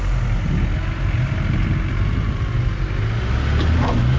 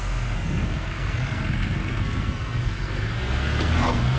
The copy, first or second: second